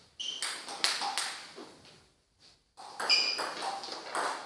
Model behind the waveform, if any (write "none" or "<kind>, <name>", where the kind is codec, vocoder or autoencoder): none